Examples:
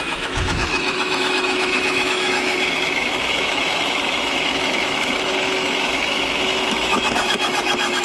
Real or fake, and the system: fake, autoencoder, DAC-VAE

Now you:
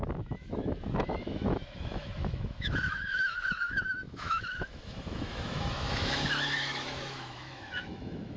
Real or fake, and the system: fake, autoencoder, DAC-VAE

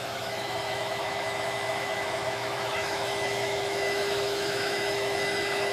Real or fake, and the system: fake, autoencoder, DAC-VAE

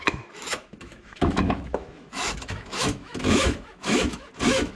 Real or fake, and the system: fake, autoencoder, DAC-VAE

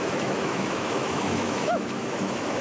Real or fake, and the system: fake, autoencoder, DAC-VAE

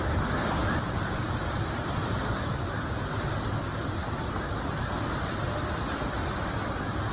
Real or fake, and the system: real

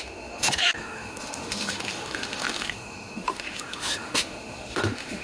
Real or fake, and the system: fake, autoencoder, DAC-VAE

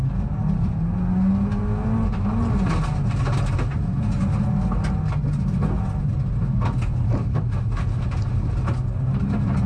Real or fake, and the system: real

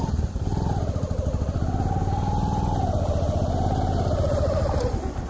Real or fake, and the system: real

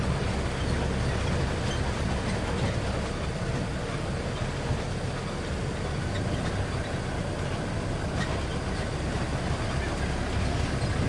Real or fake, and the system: real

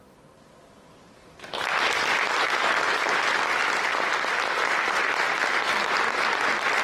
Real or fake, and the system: real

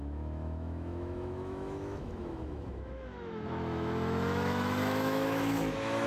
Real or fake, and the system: fake, autoencoder, DAC-VAE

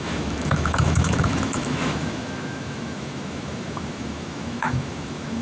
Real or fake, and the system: fake, autoencoder, DAC-VAE